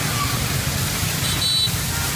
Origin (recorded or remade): recorded